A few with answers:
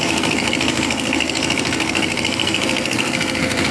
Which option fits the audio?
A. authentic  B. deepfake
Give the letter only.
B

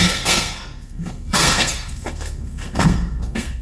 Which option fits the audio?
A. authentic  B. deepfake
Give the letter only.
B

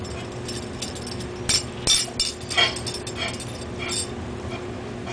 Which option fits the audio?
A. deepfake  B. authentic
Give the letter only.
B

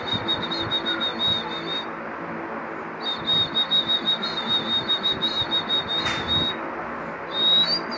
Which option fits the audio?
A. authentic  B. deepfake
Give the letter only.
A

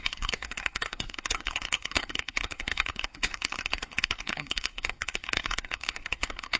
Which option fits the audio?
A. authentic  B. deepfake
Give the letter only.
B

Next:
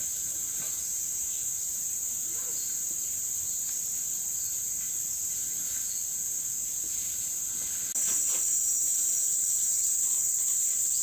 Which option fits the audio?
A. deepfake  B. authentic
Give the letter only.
B